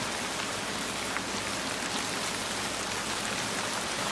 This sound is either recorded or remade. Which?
recorded